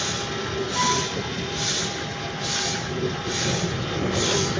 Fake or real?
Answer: real